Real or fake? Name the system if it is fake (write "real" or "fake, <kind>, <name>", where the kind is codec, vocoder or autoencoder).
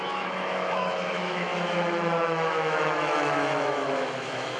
fake, autoencoder, DAC-VAE